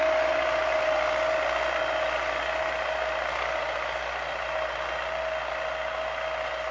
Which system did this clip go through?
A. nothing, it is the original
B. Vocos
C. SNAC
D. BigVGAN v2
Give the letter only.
A